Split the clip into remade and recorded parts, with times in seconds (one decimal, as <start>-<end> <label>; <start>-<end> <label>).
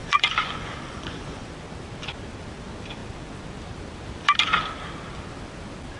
0.0-1.5 remade; 1.5-6.0 recorded